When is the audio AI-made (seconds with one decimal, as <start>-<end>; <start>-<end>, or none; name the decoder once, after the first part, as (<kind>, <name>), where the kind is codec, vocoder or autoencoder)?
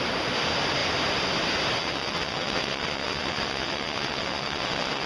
1.8-5.1 (vocoder, WaveNeXt)